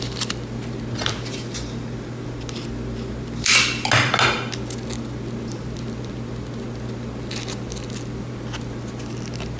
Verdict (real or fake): real